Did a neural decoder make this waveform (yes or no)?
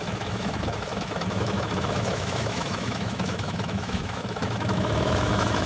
yes